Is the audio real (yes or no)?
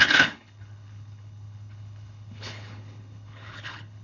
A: no